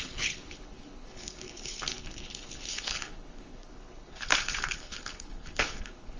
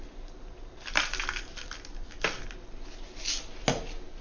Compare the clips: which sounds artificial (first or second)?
first